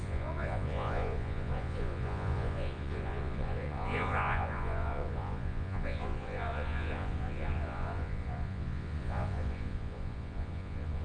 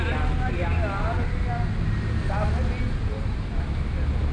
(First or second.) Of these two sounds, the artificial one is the first